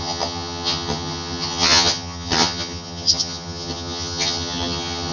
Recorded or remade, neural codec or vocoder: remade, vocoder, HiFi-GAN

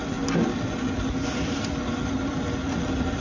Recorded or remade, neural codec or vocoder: recorded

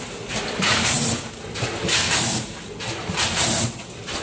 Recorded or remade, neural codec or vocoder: recorded